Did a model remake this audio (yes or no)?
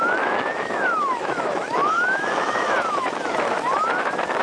yes